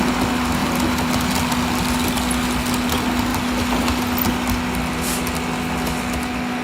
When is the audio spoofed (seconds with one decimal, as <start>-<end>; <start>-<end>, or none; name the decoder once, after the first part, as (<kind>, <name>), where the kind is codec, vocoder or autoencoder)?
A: none